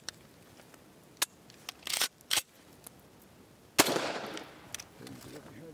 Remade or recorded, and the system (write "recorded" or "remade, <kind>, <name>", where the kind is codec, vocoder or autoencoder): recorded